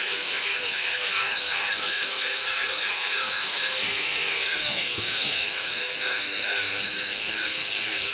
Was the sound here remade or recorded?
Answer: remade